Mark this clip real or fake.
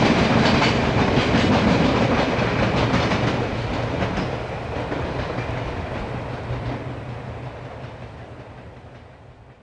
real